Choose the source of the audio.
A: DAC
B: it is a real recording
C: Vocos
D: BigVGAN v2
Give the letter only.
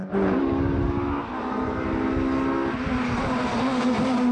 B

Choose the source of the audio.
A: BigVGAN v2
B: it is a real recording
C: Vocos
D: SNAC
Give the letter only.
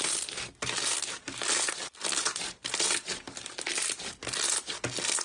B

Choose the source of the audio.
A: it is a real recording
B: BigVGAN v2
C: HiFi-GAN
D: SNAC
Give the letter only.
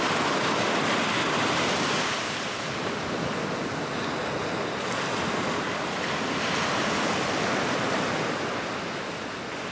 A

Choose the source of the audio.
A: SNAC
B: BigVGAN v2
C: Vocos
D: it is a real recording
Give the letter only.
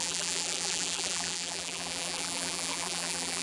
B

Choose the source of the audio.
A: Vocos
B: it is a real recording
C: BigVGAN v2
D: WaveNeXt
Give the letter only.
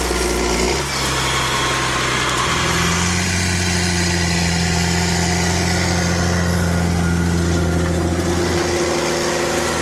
B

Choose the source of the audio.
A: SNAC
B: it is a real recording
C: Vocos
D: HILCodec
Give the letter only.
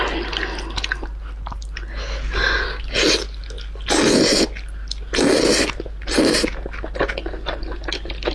B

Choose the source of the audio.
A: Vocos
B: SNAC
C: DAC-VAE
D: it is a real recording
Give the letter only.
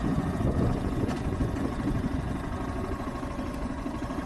A